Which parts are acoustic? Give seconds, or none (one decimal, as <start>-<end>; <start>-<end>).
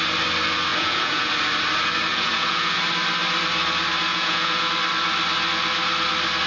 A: 0.0-0.7; 1.3-2.1; 2.8-4.1; 4.7-6.5